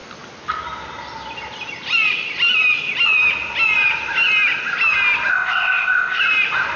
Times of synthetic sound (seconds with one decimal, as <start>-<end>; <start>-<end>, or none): 5.3-6.2